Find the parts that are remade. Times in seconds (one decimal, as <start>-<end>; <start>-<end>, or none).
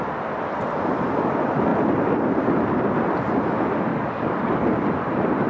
3.9-4.6